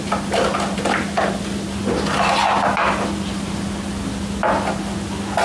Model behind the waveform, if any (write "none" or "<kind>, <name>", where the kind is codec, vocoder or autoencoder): none